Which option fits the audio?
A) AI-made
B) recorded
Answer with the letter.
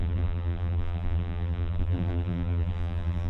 A